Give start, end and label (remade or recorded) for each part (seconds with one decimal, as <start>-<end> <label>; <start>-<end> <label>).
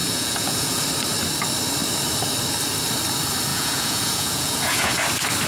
0.0-0.8 remade; 0.8-3.5 recorded; 3.5-4.9 remade; 4.9-5.5 recorded